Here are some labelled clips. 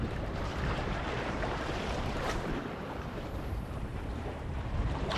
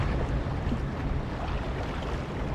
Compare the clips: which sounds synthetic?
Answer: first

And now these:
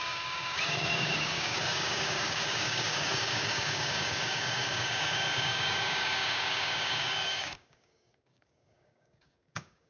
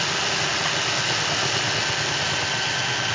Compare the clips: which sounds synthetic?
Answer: first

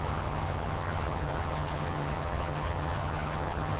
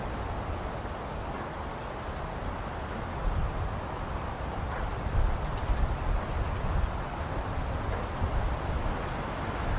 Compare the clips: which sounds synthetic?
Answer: first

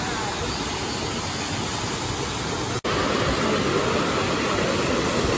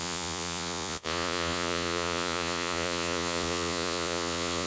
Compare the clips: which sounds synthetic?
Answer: second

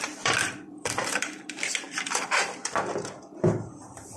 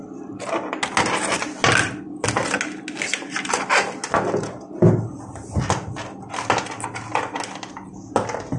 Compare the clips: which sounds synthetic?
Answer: first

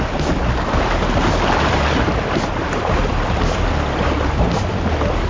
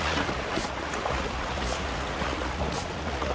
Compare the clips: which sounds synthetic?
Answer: second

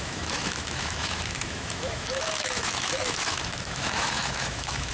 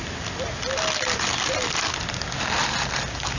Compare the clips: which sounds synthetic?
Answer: first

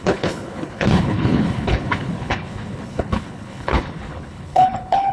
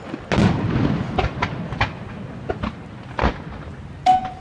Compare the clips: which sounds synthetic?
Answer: first